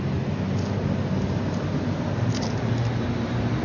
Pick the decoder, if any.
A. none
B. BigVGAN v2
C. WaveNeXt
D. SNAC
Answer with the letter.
A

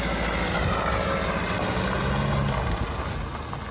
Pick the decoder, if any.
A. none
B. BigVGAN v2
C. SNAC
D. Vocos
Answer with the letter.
A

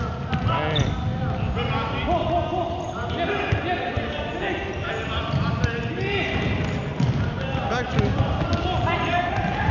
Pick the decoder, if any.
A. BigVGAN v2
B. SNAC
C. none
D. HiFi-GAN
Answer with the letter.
C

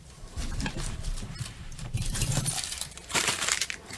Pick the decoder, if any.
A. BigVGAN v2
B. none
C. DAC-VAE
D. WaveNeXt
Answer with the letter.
A